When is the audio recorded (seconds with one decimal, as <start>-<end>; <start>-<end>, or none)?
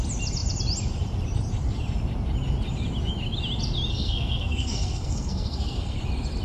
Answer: 0.0-3.9; 6.0-6.4